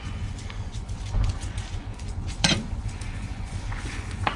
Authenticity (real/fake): fake